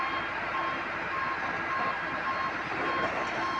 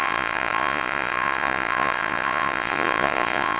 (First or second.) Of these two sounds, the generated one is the second